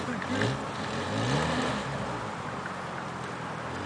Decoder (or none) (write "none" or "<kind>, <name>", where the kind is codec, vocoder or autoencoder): none